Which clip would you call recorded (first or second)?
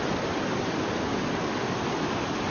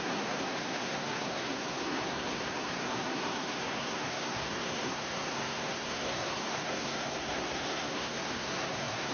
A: first